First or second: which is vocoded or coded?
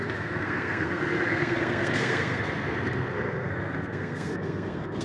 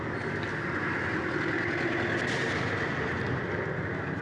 first